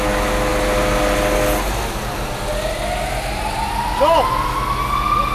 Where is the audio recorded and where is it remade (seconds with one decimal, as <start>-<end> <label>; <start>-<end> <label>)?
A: 0.0-5.3 recorded